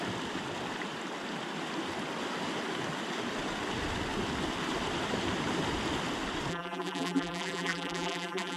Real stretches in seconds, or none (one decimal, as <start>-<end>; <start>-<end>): 0.0-6.5